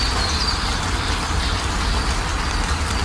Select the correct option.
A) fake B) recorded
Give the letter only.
B